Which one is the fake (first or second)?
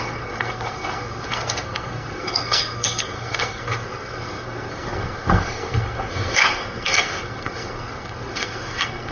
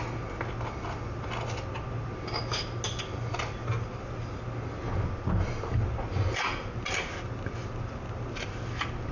first